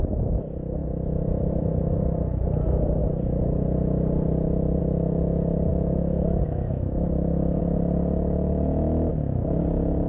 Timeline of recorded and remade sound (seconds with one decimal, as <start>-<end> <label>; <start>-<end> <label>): 0.0-5.7 recorded; 5.7-7.6 remade; 7.6-9.1 recorded; 9.1-9.6 remade; 9.6-10.1 recorded